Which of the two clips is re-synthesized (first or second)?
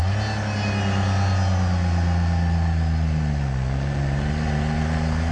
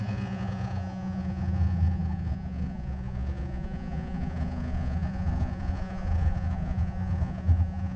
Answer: second